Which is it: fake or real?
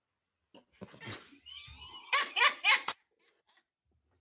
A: real